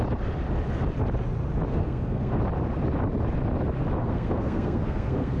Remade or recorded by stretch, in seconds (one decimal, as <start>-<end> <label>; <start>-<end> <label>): 0.0-1.7 recorded; 1.7-2.4 remade; 2.4-4.0 recorded; 4.0-5.4 remade